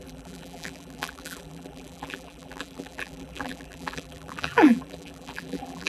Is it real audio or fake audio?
fake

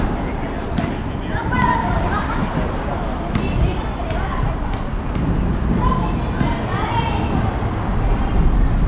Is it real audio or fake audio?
real